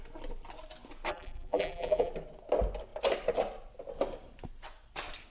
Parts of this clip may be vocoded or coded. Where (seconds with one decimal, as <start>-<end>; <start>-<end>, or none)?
1.1-2.1